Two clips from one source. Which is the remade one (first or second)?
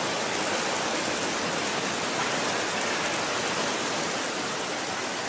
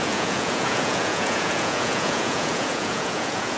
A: second